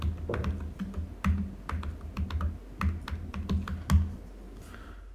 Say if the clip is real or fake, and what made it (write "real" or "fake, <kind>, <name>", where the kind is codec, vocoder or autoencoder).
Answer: real